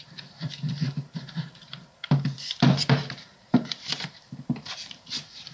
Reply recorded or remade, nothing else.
remade